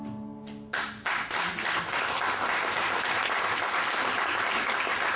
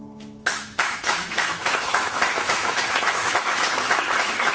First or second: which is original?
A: first